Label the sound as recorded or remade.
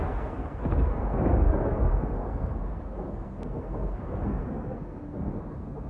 remade